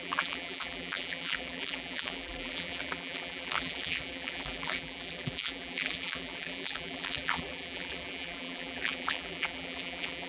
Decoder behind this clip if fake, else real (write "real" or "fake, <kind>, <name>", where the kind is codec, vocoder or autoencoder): fake, vocoder, BigVGAN v2